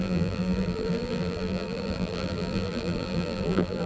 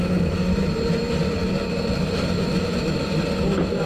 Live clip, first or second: second